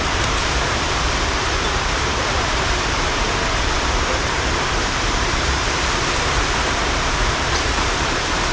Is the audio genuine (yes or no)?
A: no